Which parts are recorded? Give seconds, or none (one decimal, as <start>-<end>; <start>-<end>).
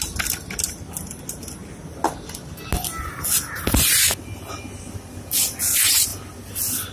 0.0-6.9